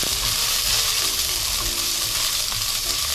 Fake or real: fake